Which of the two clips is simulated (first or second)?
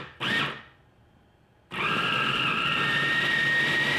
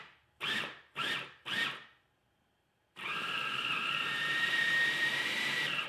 second